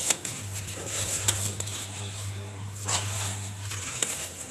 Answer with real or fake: fake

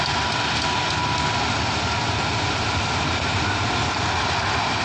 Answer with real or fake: real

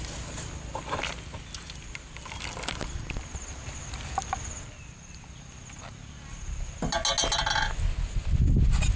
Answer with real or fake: real